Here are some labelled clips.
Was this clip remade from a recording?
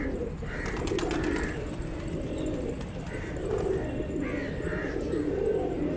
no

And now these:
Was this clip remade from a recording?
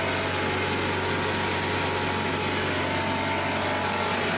no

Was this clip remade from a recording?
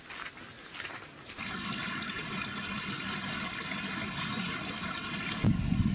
no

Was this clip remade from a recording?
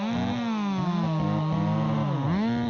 no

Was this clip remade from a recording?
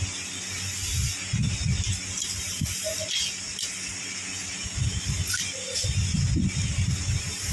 no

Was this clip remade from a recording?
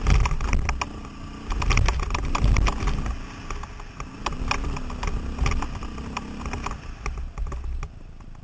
no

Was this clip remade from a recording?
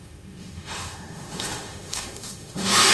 yes